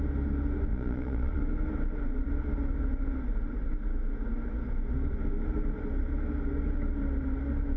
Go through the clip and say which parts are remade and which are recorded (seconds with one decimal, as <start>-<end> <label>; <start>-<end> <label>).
0.0-0.7 recorded; 0.7-1.4 remade; 1.4-7.8 recorded